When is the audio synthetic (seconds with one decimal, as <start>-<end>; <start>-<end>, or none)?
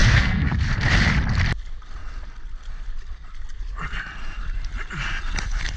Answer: 0.0-0.6